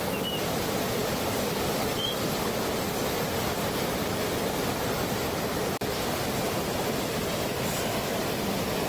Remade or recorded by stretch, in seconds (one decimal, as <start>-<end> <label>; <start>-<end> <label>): 0.0-8.9 recorded